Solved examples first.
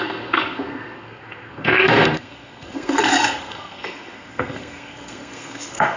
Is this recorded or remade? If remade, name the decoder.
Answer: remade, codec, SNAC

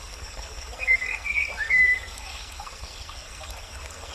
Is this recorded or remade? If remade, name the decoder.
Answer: remade, codec, SNAC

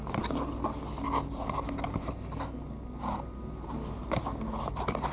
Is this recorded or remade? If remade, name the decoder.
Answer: recorded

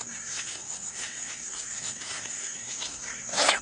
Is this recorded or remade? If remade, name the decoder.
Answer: remade, codec, SNAC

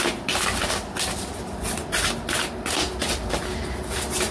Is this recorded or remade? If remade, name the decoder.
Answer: recorded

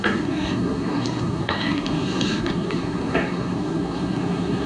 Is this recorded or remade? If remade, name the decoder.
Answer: remade, codec, SNAC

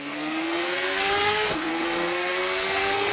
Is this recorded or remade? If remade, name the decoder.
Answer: remade, codec, SNAC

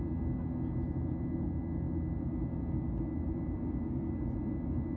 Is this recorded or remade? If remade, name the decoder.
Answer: recorded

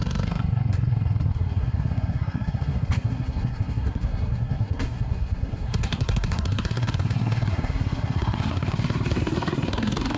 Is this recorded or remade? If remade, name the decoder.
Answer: remade, codec, SNAC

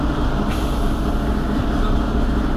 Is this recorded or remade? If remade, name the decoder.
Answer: recorded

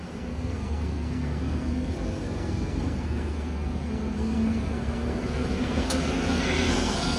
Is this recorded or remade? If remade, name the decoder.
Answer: remade, codec, SNAC